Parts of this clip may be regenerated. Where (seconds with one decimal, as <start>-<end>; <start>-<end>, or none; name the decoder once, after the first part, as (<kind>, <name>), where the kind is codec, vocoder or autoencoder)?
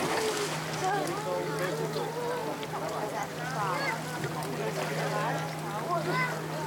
none